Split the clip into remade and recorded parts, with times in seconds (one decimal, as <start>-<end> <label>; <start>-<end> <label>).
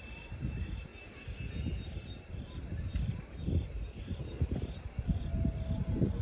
0.0-0.9 remade; 0.9-2.0 recorded; 2.0-6.2 remade